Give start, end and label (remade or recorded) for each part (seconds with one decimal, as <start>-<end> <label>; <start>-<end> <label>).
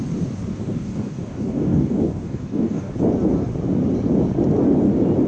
0.0-0.5 recorded; 0.5-2.9 remade; 2.9-5.3 recorded